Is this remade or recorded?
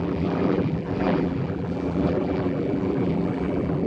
remade